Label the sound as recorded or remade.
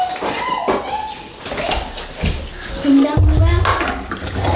recorded